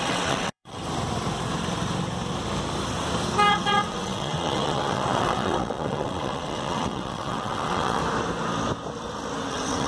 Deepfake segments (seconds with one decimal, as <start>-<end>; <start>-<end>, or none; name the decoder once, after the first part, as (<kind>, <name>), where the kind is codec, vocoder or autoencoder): 0.0-0.8 (vocoder, WaveNeXt); 3.5-8.0; 9.5-9.9